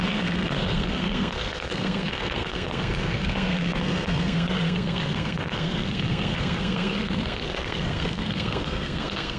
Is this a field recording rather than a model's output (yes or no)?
no